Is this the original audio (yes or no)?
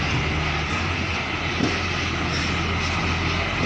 yes